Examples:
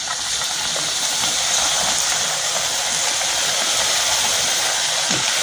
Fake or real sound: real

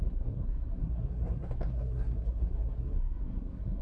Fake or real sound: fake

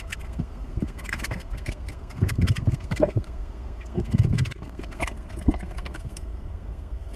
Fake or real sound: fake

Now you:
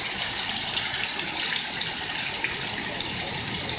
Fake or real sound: real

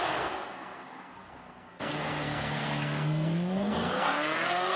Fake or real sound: fake